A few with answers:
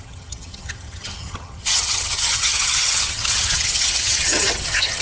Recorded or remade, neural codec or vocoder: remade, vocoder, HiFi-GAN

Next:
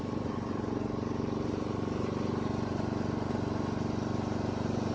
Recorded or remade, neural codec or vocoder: recorded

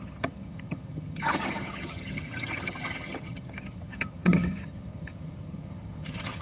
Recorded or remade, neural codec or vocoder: remade, vocoder, HiFi-GAN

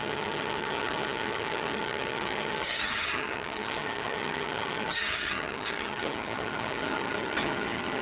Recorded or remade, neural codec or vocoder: remade, vocoder, HiFi-GAN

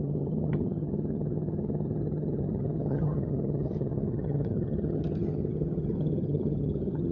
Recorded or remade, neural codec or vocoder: remade, vocoder, HiFi-GAN